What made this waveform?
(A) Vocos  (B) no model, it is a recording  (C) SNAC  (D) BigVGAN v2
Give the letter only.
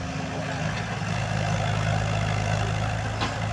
B